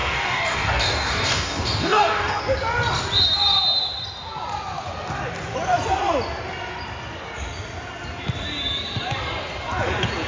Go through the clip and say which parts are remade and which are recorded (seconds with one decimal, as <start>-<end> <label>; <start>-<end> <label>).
0.0-2.4 remade; 2.4-10.3 recorded